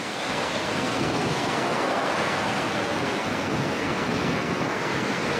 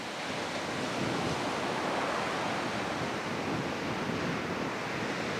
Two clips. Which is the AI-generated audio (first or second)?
first